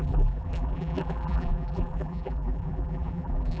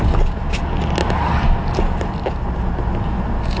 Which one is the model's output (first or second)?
first